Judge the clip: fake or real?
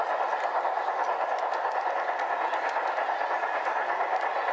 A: real